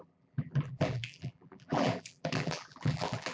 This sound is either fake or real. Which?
fake